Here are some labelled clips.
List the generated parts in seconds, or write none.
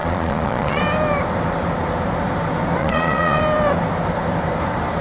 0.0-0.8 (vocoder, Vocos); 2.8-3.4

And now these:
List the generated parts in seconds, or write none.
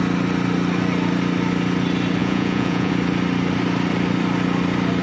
2.2-2.9 (vocoder, Vocos)